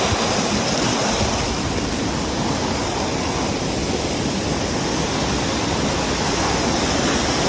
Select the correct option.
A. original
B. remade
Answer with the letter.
A